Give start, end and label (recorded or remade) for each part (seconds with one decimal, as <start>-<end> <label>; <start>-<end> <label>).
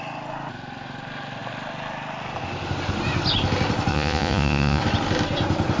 0.0-3.9 recorded; 3.9-4.8 remade; 4.8-5.8 recorded